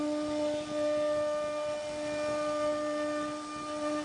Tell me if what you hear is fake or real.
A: real